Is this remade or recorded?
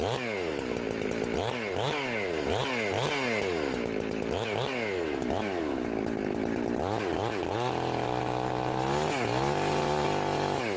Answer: recorded